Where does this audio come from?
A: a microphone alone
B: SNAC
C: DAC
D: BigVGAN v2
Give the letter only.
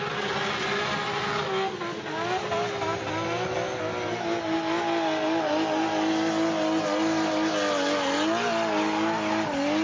A